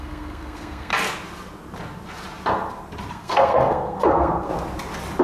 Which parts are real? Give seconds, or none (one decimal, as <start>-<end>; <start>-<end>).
0.9-3.1; 4.5-5.2